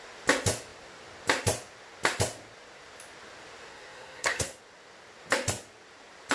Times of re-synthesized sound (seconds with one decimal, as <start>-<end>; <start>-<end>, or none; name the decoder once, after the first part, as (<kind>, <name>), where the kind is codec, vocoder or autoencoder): 3.7-4.6 (codec, SNAC)